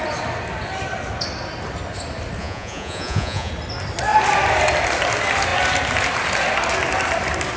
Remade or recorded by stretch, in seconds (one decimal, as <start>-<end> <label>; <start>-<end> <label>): 0.0-2.4 recorded; 2.4-3.5 remade; 3.5-7.6 recorded